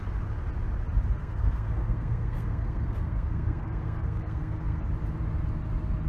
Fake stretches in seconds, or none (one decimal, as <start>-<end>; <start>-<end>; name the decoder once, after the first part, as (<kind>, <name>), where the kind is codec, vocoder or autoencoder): 1.2-4.9 (codec, SNAC)